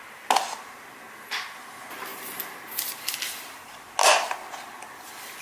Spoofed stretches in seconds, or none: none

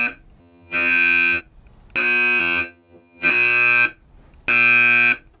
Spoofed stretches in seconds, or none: 0.4-1.4 (vocoder, HiFi-GAN); 2.4-3.3

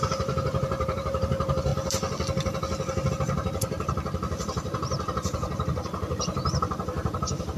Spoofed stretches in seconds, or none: 0.0-1.7 (vocoder, BigVGAN v2); 3.1-7.6